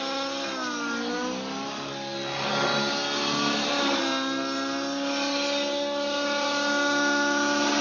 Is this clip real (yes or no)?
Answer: yes